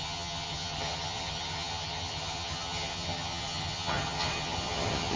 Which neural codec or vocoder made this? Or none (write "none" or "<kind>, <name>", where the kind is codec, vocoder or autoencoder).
vocoder, HiFi-GAN